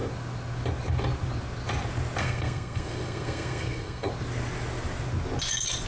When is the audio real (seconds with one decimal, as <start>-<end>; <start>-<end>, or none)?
0.0-2.2; 4.1-5.9